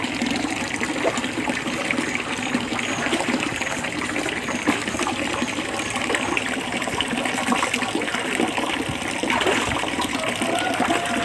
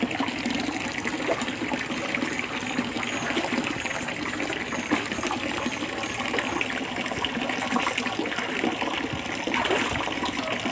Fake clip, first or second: first